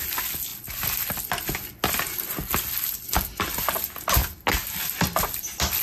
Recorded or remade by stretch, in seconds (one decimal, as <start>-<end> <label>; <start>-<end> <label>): 0.0-5.8 recorded